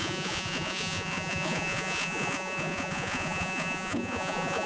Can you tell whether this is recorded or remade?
remade